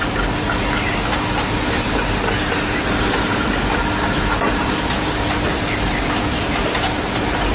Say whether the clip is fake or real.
real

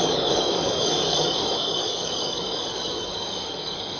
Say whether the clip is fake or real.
fake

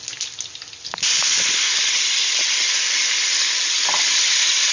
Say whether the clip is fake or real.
real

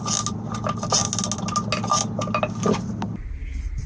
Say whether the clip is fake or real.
real